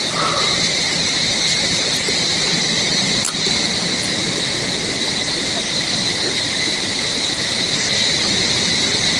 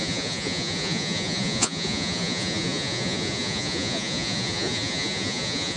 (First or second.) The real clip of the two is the first